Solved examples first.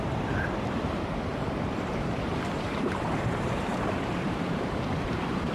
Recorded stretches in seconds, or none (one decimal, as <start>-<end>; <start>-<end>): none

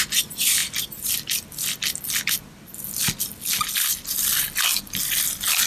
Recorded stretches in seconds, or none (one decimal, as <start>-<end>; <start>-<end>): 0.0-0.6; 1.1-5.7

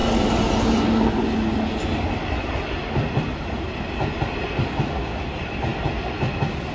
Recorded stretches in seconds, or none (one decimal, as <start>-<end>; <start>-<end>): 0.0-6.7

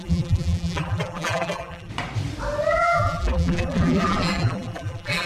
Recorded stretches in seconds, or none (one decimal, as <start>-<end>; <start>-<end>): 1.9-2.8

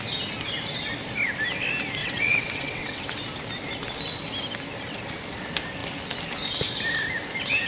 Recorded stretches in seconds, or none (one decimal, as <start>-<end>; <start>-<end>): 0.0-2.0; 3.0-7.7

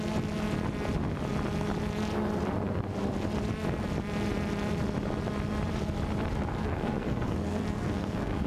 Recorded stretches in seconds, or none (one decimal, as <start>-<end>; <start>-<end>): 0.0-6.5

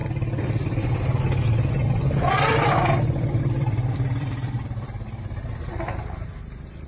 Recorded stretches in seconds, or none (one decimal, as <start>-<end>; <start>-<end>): 0.8-2.5

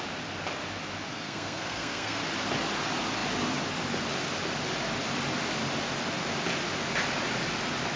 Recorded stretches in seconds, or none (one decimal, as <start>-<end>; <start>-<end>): 0.0-1.1; 2.2-8.0